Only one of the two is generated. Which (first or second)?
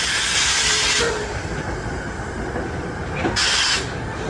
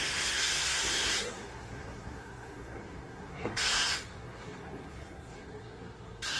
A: second